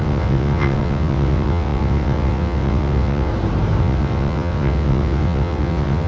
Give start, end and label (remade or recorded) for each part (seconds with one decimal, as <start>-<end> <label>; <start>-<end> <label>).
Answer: 0.0-3.3 remade; 3.3-3.8 recorded; 3.8-6.1 remade